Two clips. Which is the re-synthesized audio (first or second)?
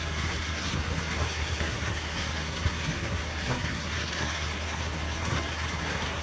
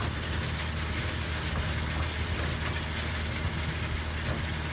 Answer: first